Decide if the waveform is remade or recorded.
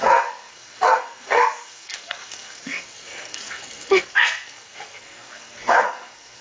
remade